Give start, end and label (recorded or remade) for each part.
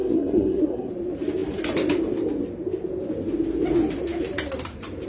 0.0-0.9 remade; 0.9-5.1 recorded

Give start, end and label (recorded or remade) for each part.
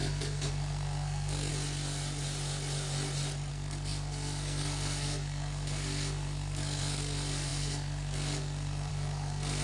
0.0-1.5 remade; 1.5-3.5 recorded; 3.5-9.6 remade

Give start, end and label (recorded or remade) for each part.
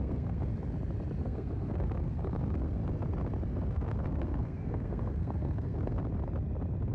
0.0-0.5 remade; 0.5-1.2 recorded; 1.2-2.8 remade; 2.8-3.7 recorded; 3.7-6.0 remade; 6.0-6.9 recorded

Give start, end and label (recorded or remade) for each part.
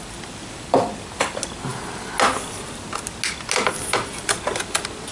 0.0-5.1 recorded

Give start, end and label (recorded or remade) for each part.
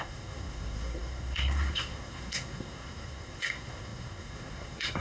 0.0-5.0 remade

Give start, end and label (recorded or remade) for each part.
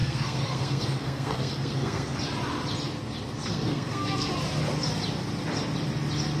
0.0-2.2 remade; 2.2-3.5 recorded; 3.5-4.3 remade; 4.3-6.4 recorded